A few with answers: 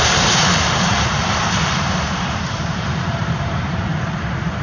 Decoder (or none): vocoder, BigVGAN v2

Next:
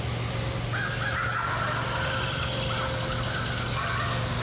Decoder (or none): none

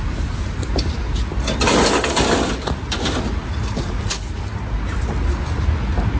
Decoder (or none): none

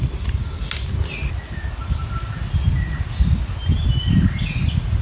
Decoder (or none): none